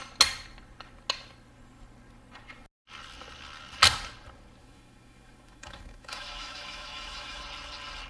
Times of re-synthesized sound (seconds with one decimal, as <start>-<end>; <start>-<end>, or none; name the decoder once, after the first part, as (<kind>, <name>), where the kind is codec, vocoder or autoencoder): 4.6-7.4 (autoencoder, DAC-VAE)